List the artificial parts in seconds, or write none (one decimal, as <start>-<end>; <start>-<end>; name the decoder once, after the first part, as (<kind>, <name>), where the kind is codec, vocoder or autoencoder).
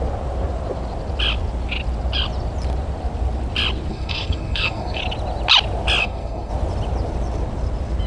3.9-5.0 (codec, SNAC); 6.0-6.5